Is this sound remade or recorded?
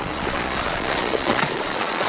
remade